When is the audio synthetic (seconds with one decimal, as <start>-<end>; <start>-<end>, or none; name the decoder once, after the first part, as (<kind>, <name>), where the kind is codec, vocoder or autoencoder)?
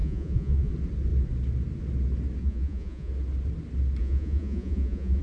0.0-0.7 (vocoder, Vocos); 2.4-3.1; 4.0-5.2